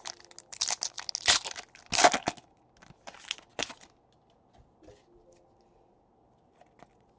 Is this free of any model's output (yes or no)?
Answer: yes